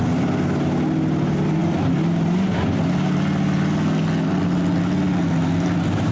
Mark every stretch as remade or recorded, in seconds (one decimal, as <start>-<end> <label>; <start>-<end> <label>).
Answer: 0.0-6.1 recorded